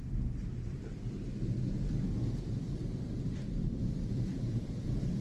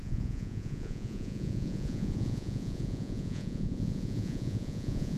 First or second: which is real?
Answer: first